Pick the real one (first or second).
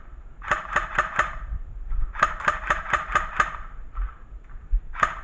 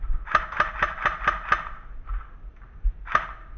second